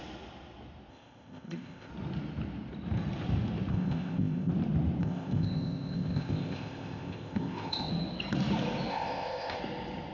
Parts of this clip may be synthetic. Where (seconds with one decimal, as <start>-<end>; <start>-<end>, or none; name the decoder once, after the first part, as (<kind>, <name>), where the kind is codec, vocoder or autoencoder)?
0.9-1.9 (codec, ZipCodec); 3.7-4.5; 5.0-7.9; 8.9-9.6